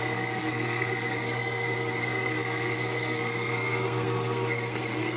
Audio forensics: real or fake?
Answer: fake